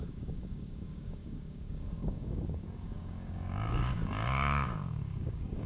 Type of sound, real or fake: fake